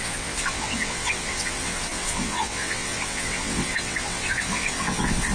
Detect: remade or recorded remade